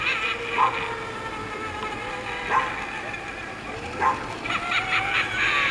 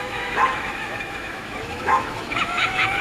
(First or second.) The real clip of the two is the first